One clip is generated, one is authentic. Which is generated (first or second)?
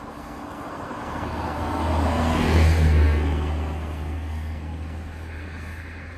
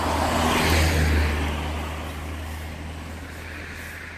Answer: first